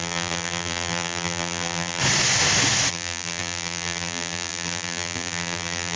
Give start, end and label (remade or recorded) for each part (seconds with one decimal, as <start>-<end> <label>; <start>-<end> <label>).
0.0-2.0 remade; 2.0-2.9 recorded; 2.9-6.0 remade